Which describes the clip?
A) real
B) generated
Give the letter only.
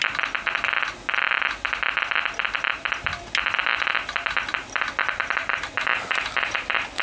A